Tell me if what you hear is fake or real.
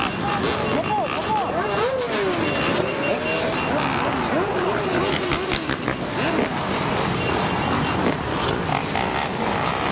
real